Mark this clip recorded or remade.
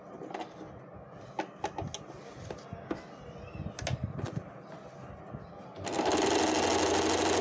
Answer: recorded